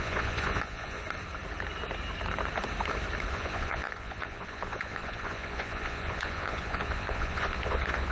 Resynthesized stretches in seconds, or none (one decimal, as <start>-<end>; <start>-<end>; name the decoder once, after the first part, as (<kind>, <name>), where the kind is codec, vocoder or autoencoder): 0.0-1.0 (vocoder, Vocos); 3.3-8.1